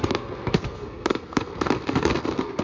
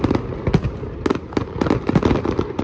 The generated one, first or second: first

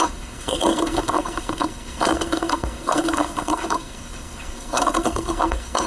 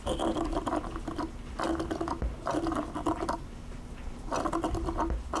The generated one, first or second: first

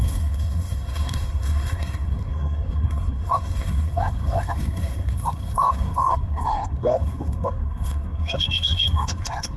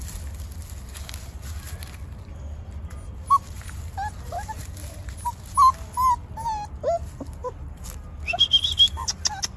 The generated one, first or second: first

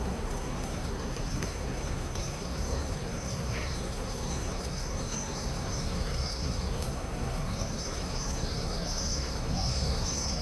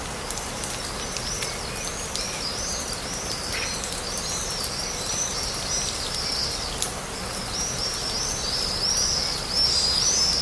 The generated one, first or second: first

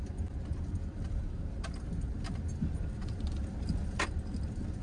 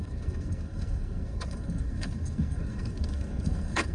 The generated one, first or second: second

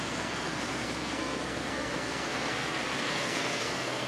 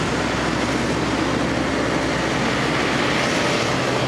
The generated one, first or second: first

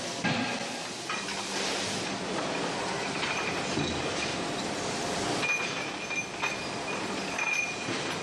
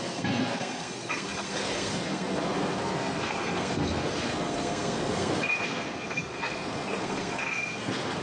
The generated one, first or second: second